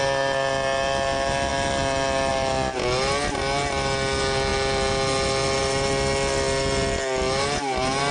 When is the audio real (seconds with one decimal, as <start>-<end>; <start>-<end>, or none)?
0.0-8.1